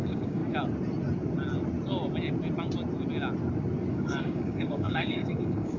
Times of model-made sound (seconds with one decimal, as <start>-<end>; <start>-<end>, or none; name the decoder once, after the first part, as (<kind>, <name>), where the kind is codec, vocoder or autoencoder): 0.0-0.4 (codec, DAC); 3.9-5.8